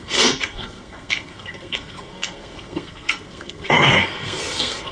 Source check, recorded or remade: remade